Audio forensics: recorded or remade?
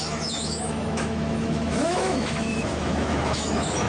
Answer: remade